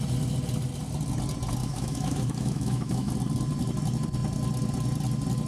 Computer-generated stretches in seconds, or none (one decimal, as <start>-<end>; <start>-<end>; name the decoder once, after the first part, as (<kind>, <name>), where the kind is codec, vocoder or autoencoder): 1.6-3.1 (autoencoder, DAC-VAE)